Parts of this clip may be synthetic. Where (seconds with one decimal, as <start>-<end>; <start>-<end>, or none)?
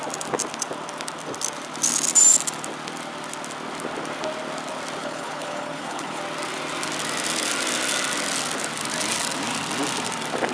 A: 5.0-6.2